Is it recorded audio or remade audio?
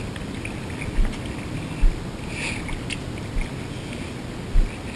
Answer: recorded